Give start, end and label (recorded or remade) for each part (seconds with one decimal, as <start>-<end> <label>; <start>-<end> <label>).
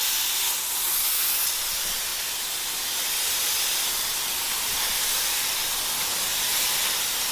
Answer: 0.0-7.3 recorded